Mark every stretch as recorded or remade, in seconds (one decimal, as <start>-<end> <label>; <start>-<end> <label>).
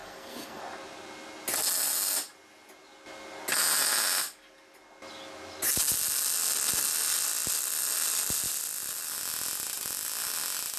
0.0-0.6 remade; 0.6-10.8 recorded